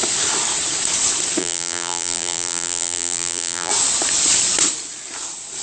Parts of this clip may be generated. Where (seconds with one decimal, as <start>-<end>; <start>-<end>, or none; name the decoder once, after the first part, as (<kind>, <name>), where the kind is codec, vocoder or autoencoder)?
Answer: 1.4-3.7 (vocoder, BigVGAN v2)

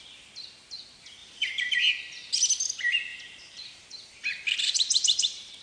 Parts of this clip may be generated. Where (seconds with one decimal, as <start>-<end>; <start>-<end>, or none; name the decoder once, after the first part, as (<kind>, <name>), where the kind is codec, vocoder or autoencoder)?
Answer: 1.2-1.9 (vocoder, BigVGAN v2); 3.1-5.6

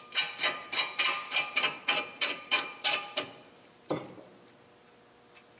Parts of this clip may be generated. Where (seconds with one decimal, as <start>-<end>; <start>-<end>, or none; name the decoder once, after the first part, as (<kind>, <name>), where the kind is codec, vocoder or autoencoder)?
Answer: 0.6-4.0 (vocoder, BigVGAN v2)

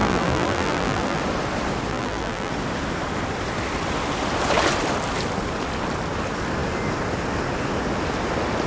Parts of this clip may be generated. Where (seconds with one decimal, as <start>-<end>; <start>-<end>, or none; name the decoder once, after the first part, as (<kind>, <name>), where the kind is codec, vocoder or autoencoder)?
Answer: 0.0-1.2 (vocoder, BigVGAN v2); 1.9-2.5

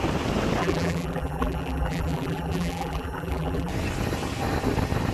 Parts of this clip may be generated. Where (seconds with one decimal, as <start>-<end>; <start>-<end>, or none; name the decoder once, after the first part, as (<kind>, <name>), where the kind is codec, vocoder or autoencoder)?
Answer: 0.6-3.7 (vocoder, BigVGAN v2)

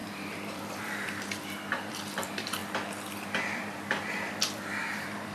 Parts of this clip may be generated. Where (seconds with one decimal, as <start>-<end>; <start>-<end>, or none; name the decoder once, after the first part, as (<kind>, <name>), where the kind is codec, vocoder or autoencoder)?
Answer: 0.0-2.6 (vocoder, BigVGAN v2); 3.6-5.3